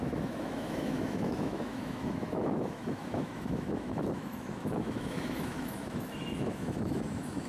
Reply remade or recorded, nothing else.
remade